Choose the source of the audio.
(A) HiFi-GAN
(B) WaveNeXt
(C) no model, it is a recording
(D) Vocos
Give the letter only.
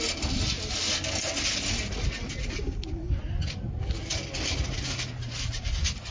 C